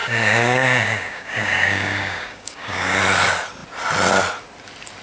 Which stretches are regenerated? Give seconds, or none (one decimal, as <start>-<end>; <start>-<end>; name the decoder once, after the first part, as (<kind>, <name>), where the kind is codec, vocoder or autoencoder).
0.0-3.0 (codec, DAC)